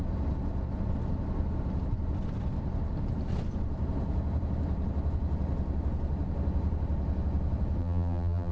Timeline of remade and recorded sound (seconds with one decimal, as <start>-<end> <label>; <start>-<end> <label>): 0.0-7.8 recorded; 7.8-8.5 remade